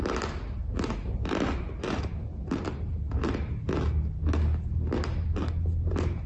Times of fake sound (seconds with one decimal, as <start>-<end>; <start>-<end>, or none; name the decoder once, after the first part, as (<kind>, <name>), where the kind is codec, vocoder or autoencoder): none